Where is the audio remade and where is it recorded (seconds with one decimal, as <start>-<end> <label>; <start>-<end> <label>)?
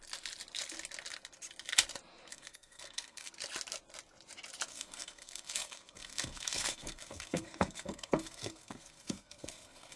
0.0-2.3 recorded; 2.3-3.3 remade; 3.3-4.7 recorded; 4.7-10.0 remade